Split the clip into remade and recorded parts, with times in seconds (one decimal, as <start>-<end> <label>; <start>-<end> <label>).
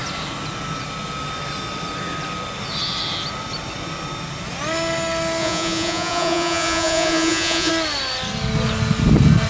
0.0-5.4 recorded; 5.4-7.7 remade; 7.7-9.5 recorded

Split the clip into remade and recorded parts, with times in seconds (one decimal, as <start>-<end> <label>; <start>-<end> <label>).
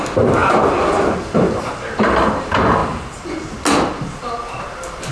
0.0-5.1 recorded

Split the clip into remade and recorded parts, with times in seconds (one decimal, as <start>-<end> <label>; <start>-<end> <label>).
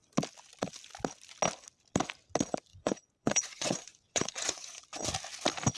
0.0-2.7 recorded; 2.7-4.8 remade; 4.8-5.8 recorded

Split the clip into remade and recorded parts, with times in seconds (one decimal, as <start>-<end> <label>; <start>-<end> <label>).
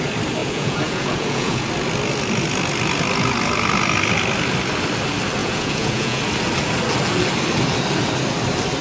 0.0-0.4 recorded; 0.4-1.7 remade; 1.7-5.4 recorded; 5.4-6.2 remade; 6.2-8.8 recorded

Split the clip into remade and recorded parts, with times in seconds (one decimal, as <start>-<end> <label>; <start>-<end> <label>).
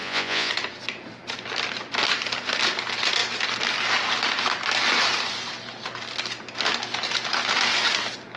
0.0-0.5 remade; 0.5-8.4 recorded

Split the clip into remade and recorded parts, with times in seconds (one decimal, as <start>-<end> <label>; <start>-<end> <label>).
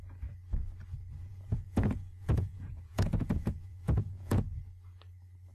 0.0-1.1 recorded; 1.1-4.4 remade; 4.4-5.5 recorded